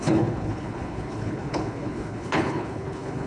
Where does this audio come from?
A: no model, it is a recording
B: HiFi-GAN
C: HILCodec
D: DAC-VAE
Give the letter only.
C